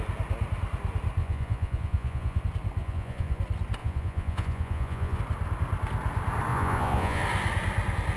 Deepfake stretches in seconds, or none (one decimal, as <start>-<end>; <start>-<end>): 1.2-2.4; 2.8-3.4; 3.8-5.2; 6.5-7.2